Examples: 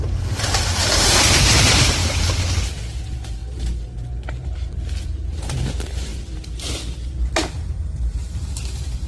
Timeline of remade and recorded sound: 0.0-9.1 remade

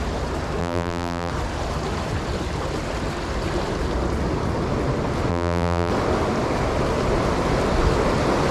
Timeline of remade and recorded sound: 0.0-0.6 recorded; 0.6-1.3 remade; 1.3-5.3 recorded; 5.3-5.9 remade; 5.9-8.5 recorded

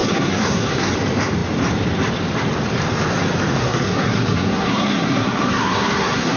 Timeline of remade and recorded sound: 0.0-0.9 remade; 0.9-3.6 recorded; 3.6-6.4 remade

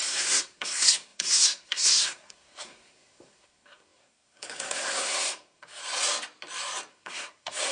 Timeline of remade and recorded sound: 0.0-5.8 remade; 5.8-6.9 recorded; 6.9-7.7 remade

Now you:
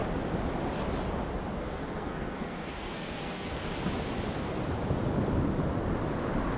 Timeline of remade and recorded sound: 0.0-1.6 recorded; 1.6-3.6 remade; 3.6-6.6 recorded